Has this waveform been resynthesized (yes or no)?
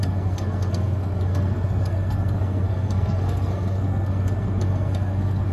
yes